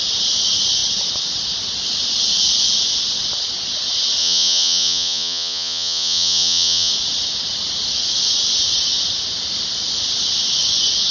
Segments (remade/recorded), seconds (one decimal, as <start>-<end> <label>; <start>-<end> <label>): 0.0-4.2 recorded; 4.2-6.9 remade; 6.9-11.1 recorded